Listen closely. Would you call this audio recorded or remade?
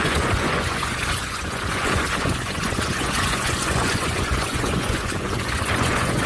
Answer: remade